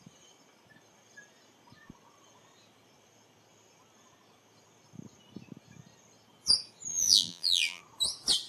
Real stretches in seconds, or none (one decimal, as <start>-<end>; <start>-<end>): 0.0-6.9; 7.8-8.5